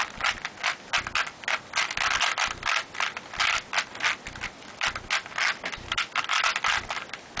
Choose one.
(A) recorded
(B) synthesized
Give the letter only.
A